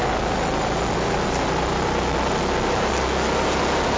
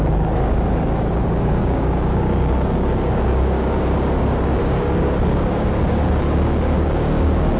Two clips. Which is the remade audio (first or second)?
second